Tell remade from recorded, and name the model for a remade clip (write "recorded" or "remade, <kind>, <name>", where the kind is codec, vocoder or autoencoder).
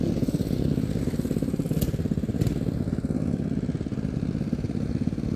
recorded